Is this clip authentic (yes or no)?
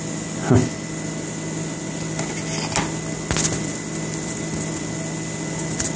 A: yes